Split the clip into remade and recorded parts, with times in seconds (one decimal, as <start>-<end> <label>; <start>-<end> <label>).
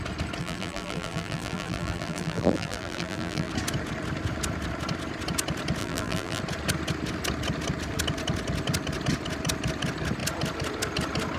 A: 0.0-0.4 recorded; 0.4-3.5 remade; 3.5-5.8 recorded; 5.8-6.4 remade; 6.4-11.4 recorded